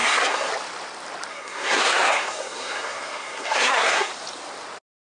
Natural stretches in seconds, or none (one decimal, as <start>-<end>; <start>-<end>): 0.5-1.3; 4.1-5.0